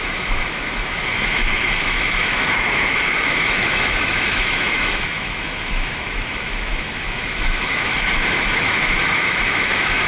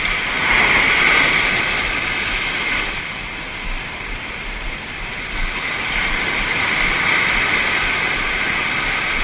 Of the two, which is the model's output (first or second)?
first